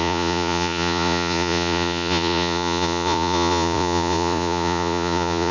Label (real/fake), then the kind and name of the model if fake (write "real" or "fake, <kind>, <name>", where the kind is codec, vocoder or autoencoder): fake, vocoder, Vocos